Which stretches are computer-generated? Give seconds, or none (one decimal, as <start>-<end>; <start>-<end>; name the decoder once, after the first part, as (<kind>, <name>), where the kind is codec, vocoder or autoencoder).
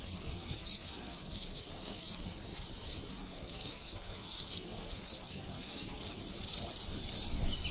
0.0-2.4 (codec, SNAC); 3.1-6.2